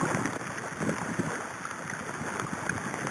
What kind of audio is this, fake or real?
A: real